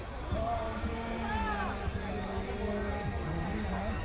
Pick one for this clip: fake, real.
real